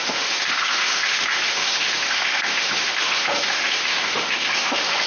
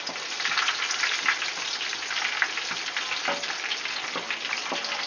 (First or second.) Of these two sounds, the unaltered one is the second